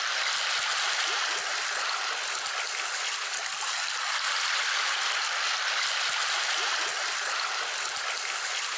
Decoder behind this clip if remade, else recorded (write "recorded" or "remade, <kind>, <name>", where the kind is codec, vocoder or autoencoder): recorded